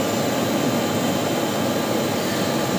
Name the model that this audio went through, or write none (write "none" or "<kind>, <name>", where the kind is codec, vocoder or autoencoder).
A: none